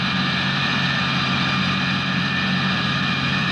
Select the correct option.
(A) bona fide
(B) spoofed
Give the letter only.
A